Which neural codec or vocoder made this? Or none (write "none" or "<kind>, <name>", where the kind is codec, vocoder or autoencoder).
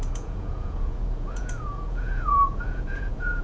vocoder, Vocos